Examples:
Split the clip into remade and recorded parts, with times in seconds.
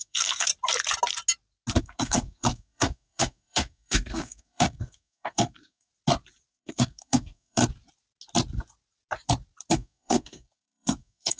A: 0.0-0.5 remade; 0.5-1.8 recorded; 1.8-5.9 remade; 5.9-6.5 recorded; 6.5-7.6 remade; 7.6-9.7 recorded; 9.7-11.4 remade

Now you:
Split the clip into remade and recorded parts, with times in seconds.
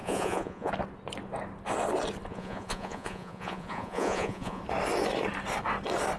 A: 0.0-0.7 remade; 0.7-2.3 recorded; 2.3-4.6 remade; 4.6-6.2 recorded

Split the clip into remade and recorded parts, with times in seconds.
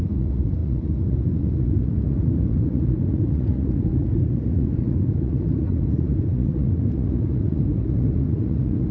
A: 0.0-8.9 remade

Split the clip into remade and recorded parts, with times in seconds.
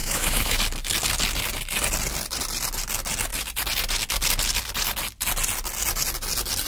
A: 0.0-0.6 remade; 0.6-6.7 recorded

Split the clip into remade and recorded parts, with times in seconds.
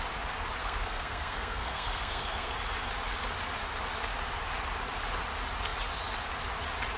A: 0.0-0.6 recorded; 0.6-2.5 remade; 2.5-7.0 recorded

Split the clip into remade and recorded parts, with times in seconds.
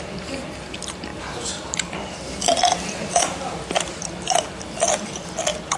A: 0.0-5.8 recorded